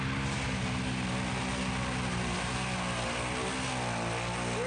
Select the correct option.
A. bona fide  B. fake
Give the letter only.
A